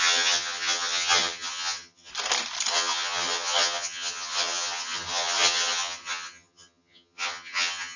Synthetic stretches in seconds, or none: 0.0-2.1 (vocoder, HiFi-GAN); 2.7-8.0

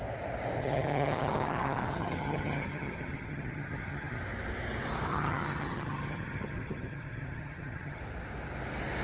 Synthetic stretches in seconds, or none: 0.6-4.2 (vocoder, HiFi-GAN); 5.1-8.0

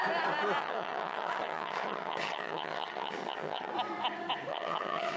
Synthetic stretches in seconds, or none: 0.6-3.7 (vocoder, HiFi-GAN); 4.5-5.2